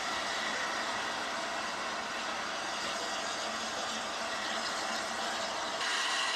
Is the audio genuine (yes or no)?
yes